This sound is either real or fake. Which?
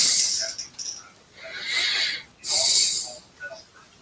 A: real